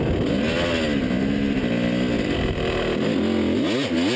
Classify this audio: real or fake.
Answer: real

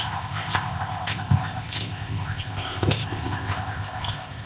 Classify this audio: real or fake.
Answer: fake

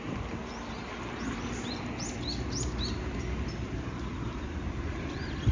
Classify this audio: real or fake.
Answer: real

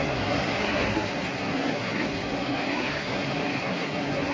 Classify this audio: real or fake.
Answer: fake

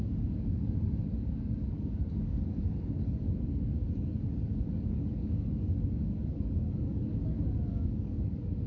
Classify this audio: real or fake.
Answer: fake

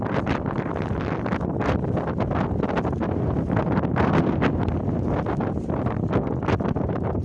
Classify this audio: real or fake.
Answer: real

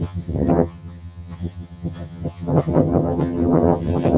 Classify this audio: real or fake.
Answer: fake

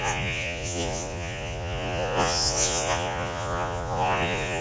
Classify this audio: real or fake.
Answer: fake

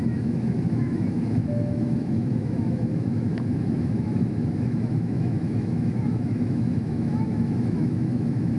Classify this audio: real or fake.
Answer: fake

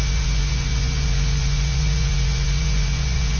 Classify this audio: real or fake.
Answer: fake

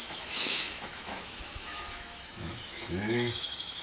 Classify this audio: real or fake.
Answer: fake